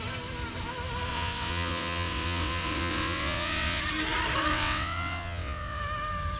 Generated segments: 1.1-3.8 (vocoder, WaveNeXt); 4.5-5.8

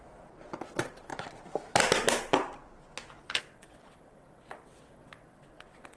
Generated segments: 0.6-1.1 (vocoder, WaveNeXt); 3.4-6.0

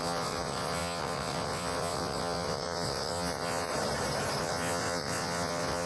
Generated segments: 0.0-3.7 (vocoder, WaveNeXt); 4.4-5.9

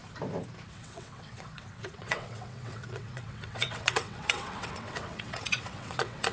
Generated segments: 0.7-6.3 (vocoder, WaveNeXt)

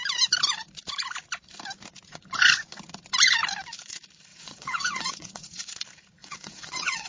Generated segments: 4.3-5.7 (vocoder, WaveNeXt); 6.2-7.1

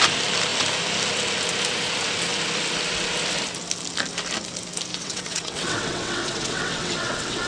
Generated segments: 4.9-7.5 (vocoder, WaveNeXt)